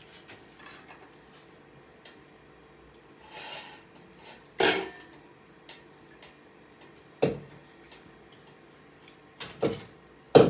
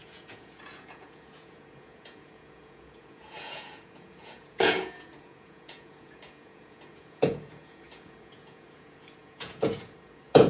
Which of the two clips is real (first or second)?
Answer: first